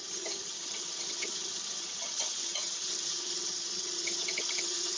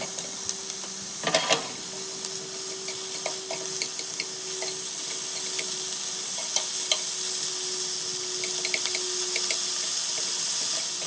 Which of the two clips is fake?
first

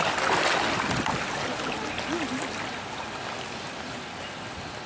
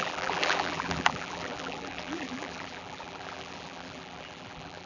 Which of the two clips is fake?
second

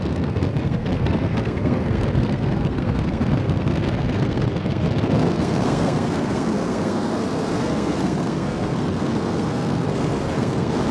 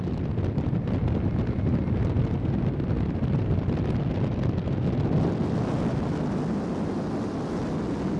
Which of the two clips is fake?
first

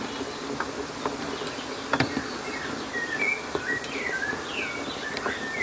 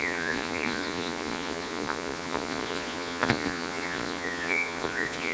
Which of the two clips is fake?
second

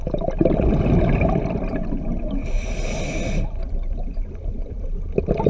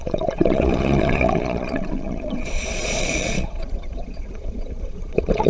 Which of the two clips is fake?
second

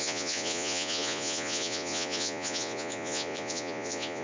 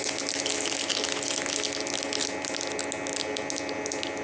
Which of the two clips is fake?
first